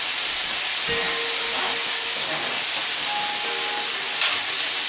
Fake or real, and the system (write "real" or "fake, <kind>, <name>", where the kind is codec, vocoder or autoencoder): real